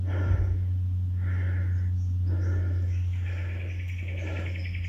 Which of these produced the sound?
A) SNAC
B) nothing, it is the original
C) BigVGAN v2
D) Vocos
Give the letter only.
B